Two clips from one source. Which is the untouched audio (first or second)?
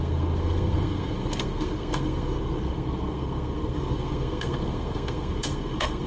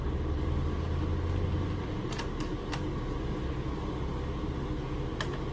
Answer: second